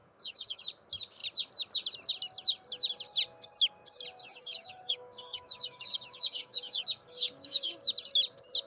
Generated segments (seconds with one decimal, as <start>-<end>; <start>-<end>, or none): 0.0-0.6; 4.2-7.8